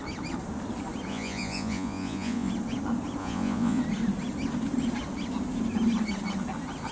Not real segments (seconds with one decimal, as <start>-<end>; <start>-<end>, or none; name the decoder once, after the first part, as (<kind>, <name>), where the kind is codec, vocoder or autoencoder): 1.1-2.5 (vocoder, Vocos); 3.2-3.8